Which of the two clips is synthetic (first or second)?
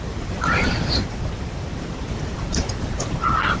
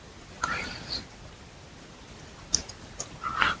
first